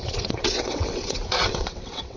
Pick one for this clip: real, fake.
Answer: fake